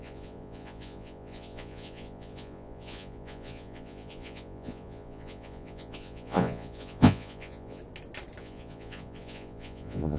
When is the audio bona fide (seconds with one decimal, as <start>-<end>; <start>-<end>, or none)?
7.8-8.4